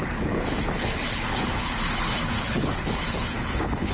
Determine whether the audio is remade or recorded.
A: remade